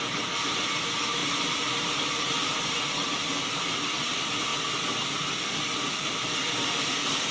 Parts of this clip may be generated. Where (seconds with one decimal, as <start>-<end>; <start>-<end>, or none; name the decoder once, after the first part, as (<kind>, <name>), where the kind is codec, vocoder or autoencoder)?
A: 0.0-4.5 (vocoder, BigVGAN v2); 5.3-7.3